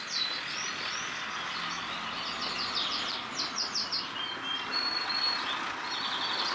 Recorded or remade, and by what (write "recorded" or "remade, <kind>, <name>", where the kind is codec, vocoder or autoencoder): recorded